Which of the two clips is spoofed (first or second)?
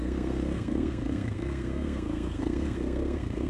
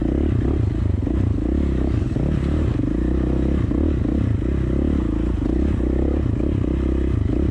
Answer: first